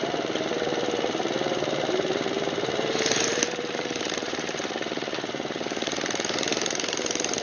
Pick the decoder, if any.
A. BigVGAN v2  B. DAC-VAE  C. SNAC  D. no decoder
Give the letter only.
A